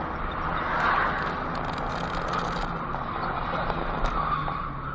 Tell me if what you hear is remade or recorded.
recorded